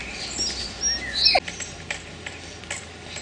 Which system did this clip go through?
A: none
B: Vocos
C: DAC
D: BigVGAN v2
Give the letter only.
A